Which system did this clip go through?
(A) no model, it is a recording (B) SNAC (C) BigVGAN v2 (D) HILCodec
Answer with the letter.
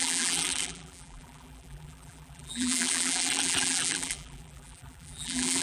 C